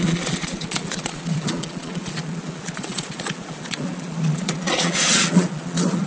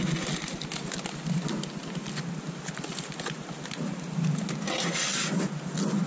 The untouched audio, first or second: second